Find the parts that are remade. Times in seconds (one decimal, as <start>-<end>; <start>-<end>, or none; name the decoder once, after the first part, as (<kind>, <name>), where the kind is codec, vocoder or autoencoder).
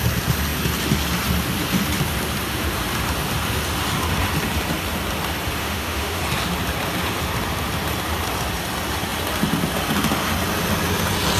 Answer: 5.6-6.2 (autoencoder, DAC-VAE)